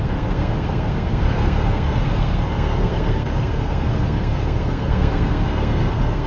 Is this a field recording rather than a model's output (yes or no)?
no